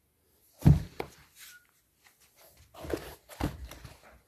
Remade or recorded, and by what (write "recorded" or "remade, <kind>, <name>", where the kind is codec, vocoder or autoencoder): recorded